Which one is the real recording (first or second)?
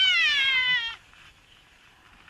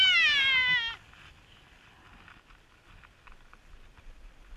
second